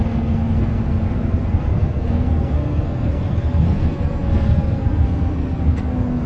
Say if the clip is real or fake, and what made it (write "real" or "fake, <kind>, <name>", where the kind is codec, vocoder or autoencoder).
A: fake, codec, SNAC